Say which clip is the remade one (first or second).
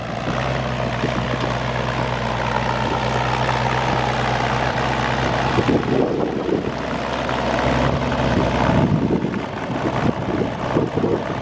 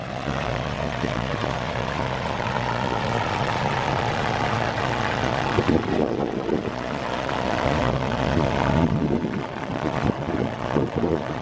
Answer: second